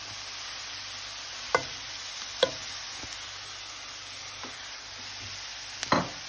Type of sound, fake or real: real